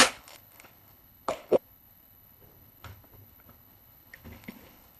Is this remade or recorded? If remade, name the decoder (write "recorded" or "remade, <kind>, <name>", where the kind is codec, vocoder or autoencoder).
remade, codec, HILCodec